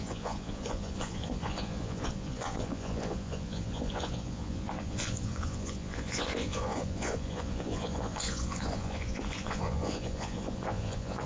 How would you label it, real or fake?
fake